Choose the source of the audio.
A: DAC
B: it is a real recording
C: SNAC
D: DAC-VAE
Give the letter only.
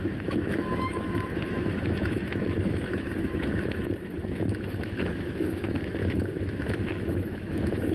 D